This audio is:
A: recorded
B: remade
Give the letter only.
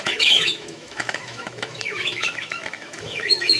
B